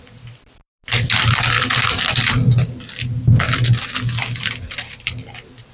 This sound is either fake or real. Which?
real